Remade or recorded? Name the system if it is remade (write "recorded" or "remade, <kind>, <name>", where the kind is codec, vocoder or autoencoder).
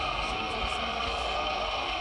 remade, codec, SNAC